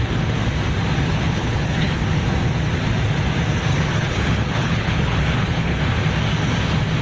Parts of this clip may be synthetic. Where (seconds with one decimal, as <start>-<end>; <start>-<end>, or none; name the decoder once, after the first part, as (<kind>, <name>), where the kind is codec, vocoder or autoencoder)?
1.1-2.0 (codec, HILCodec); 3.7-5.8